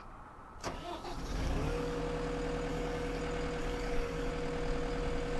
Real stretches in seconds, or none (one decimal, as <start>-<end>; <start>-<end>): 0.0-0.6; 2.0-2.7; 3.2-3.6; 4.3-5.4